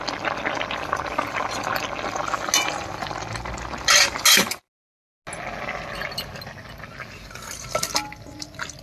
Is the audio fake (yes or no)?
no